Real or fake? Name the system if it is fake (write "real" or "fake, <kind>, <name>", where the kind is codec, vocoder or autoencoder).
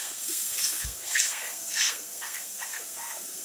fake, codec, SNAC